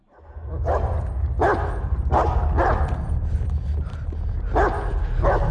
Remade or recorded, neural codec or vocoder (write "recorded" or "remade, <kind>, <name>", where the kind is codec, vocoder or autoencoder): recorded